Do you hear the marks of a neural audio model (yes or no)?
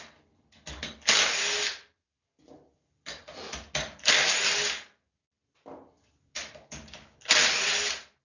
no